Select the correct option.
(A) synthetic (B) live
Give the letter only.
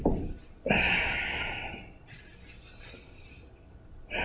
B